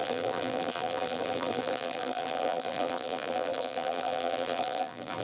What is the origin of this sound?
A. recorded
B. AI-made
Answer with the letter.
B